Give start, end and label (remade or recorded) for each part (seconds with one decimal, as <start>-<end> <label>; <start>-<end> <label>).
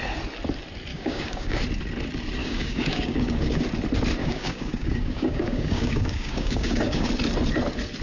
0.0-0.9 recorded; 0.9-1.6 remade; 1.6-2.4 recorded; 2.4-3.6 remade; 3.6-4.2 recorded; 4.2-7.1 remade; 7.1-8.0 recorded